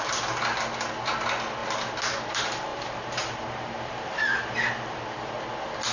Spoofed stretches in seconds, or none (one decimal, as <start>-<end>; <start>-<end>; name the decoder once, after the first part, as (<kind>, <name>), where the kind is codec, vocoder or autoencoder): 2.7-4.7 (vocoder, BigVGAN v2)